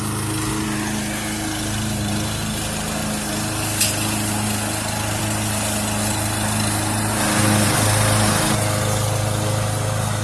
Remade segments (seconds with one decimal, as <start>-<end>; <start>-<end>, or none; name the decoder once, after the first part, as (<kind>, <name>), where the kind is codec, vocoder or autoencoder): none